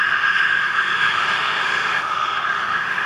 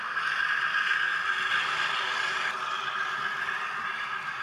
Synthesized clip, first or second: first